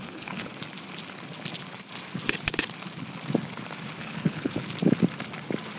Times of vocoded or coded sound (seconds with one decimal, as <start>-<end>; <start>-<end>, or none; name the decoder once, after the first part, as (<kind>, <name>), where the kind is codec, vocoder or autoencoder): 0.0-0.5 (codec, HILCodec); 4.0-4.6